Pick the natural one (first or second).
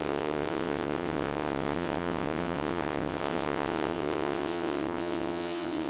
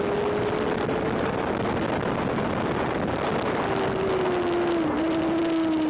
second